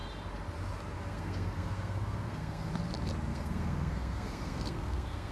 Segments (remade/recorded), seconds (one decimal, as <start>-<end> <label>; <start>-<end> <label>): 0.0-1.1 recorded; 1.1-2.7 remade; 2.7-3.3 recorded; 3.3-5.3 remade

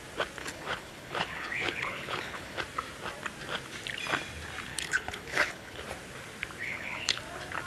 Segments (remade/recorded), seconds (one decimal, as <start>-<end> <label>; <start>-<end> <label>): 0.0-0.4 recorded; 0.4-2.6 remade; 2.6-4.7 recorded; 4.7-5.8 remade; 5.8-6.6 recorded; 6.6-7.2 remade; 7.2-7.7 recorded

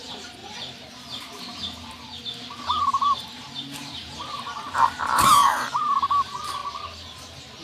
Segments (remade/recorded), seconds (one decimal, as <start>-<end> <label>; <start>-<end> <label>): 0.0-0.4 remade; 0.4-2.8 recorded; 2.8-6.6 remade; 6.6-7.6 recorded